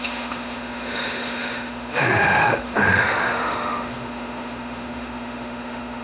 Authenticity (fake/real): fake